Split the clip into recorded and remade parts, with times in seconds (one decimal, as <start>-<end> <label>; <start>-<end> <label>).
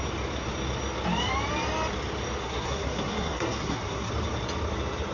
0.0-2.4 recorded; 2.4-4.1 remade; 4.1-5.1 recorded